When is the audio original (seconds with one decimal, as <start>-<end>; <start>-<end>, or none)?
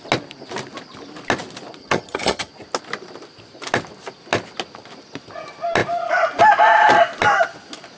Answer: 0.0-1.8; 2.5-8.0